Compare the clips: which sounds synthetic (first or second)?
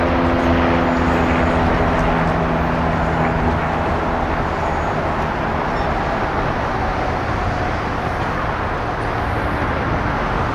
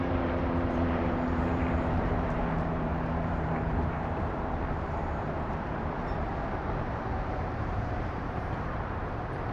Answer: second